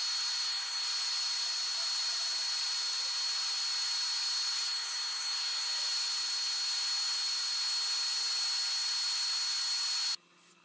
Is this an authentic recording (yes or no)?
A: yes